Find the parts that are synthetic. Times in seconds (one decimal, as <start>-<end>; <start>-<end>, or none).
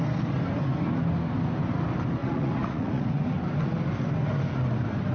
2.2-3.2